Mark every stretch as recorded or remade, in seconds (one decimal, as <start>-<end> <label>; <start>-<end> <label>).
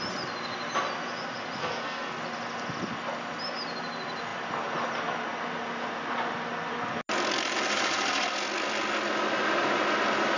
0.0-1.6 recorded; 1.6-2.2 remade; 2.2-10.4 recorded